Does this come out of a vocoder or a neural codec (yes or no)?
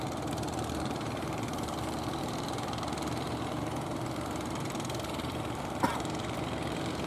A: yes